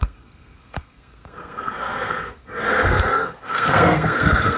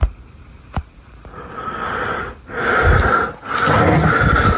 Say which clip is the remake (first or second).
first